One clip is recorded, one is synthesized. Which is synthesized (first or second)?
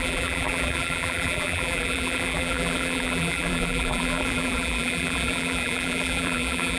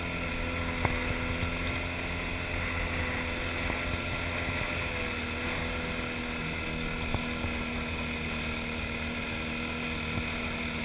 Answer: first